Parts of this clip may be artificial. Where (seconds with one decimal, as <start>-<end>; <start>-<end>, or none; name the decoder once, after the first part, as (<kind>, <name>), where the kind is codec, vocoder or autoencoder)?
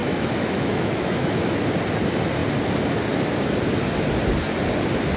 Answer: 0.0-1.6 (autoencoder, DAC-VAE)